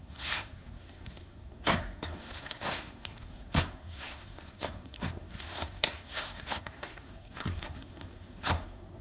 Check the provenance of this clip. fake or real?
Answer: fake